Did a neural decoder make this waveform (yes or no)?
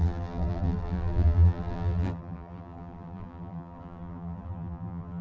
yes